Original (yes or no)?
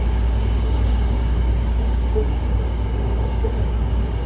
no